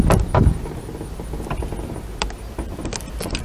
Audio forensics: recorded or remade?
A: remade